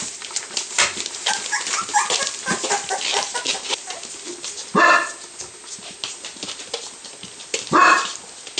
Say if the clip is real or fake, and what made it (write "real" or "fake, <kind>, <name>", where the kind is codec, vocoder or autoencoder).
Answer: real